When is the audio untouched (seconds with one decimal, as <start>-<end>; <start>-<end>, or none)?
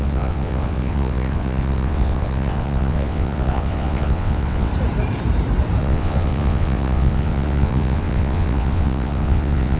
4.7-5.8